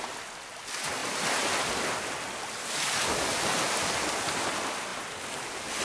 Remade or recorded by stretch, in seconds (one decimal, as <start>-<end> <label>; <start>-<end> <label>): 0.0-5.8 recorded